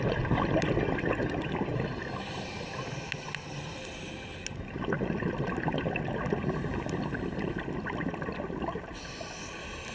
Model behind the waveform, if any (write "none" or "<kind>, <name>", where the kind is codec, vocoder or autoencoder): none